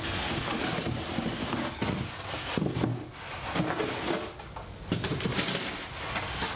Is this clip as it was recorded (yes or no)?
yes